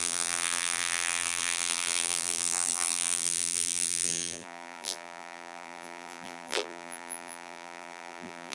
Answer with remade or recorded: remade